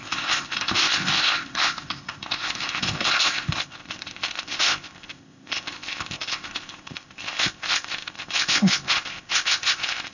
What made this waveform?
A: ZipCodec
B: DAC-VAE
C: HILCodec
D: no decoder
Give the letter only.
A